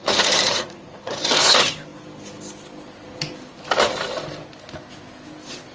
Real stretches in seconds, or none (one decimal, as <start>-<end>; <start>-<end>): 1.2-5.7